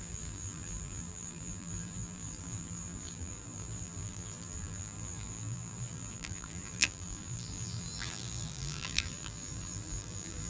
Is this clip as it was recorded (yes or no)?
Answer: no